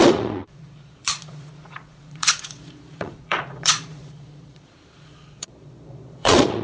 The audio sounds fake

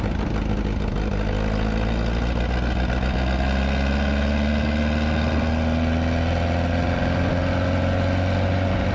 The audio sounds real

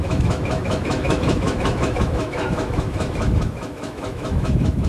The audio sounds fake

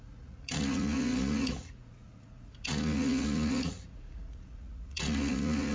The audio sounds fake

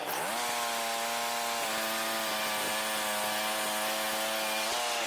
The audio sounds real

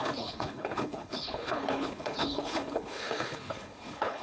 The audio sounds fake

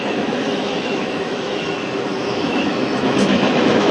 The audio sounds fake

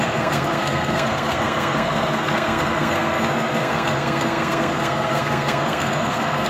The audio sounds fake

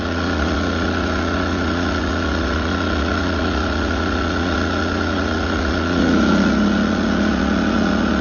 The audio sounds fake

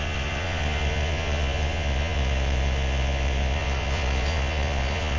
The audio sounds fake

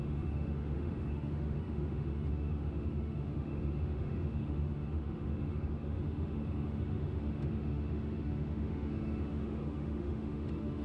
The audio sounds fake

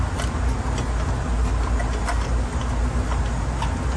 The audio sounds real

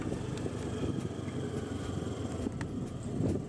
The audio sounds real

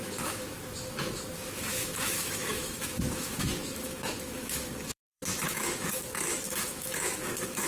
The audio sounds fake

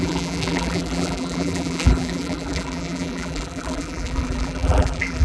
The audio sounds fake